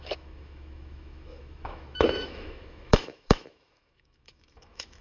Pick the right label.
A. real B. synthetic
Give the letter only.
B